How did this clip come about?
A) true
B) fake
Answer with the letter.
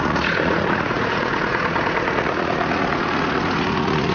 B